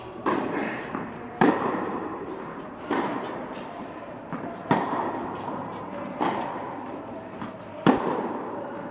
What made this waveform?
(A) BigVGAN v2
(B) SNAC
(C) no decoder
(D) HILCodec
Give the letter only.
A